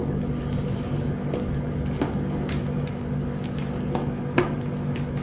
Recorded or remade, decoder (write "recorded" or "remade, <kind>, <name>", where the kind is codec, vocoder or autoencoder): remade, codec, DAC